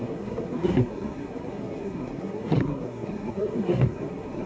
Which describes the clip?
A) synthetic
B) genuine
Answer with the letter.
A